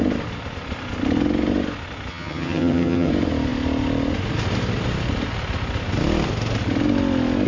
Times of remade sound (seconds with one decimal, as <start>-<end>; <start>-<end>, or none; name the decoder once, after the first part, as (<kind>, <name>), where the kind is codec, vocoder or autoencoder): 2.1-3.1 (vocoder, HiFi-GAN)